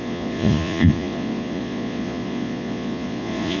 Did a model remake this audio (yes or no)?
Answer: yes